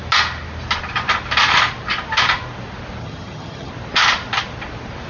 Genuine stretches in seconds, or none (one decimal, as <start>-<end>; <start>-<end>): 0.0-3.0; 3.7-5.1

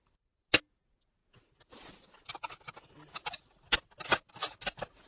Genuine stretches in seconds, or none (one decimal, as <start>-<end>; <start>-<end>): 0.0-5.1